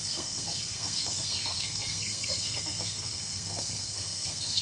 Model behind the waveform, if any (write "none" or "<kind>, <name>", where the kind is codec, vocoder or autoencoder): codec, SNAC